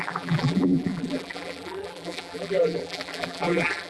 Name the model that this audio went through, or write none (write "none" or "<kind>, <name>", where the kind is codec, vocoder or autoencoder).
vocoder, BigVGAN v2